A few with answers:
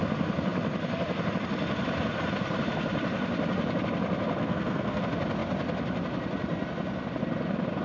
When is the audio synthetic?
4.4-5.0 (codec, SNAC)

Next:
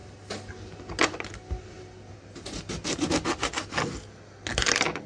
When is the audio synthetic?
none

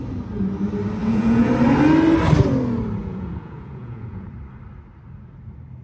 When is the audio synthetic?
1.0-1.5 (vocoder, Vocos); 3.0-4.3

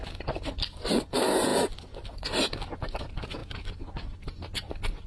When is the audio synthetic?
none